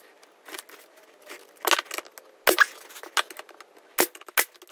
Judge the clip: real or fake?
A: real